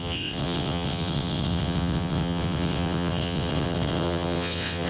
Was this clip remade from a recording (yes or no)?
yes